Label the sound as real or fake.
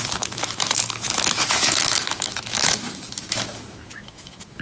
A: fake